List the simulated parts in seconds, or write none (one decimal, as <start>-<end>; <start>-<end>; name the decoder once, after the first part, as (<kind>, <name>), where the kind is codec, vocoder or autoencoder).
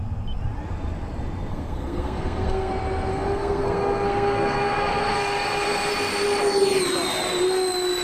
1.5-2.7 (codec, SNAC); 3.1-5.9